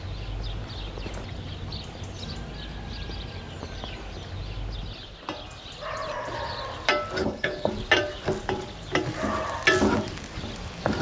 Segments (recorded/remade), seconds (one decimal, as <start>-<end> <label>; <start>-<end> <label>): 0.0-7.2 recorded; 7.2-7.7 remade; 7.7-11.0 recorded